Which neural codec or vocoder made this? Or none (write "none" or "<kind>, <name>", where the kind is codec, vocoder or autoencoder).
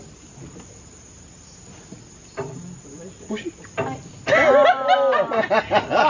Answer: none